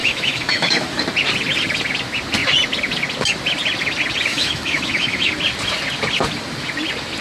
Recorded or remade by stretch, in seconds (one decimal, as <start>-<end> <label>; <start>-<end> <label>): 0.0-1.0 remade; 1.0-4.3 recorded; 4.3-5.3 remade; 5.3-7.2 recorded